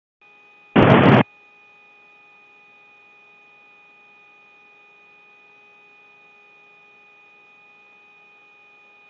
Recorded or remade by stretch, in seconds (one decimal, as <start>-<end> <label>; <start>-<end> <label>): 0.0-9.1 recorded